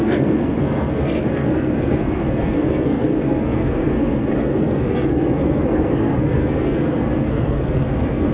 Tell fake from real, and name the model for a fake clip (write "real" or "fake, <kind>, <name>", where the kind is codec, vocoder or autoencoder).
fake, codec, SNAC